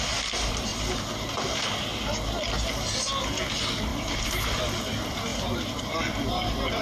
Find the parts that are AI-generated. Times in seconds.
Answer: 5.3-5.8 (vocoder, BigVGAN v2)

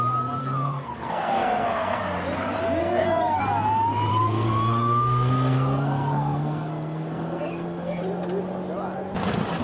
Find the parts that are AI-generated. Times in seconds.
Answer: 0.4-2.0 (codec, SNAC); 2.8-3.4; 4.1-8.0

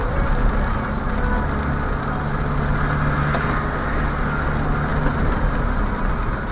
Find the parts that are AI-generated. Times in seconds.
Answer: 4.9-6.1 (vocoder, BigVGAN v2)

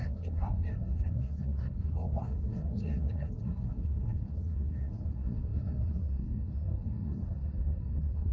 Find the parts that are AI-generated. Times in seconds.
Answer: 0.0-8.3 (codec, SNAC)

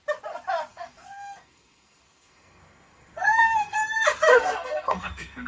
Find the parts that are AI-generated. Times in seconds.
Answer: 0.7-3.8 (codec, SNAC); 4.3-5.5